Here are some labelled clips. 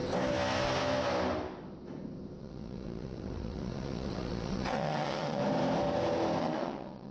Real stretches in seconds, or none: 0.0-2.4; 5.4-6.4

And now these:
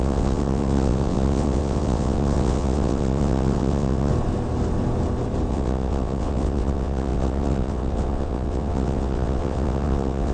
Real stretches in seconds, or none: 4.1-5.5

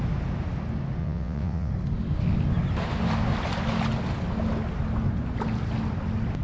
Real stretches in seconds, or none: 0.0-1.0; 1.7-6.4

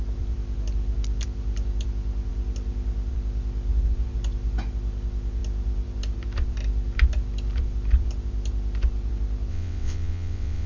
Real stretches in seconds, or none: 0.0-9.5

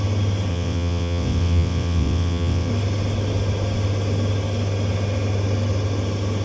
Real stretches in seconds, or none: 0.0-0.5; 2.7-6.4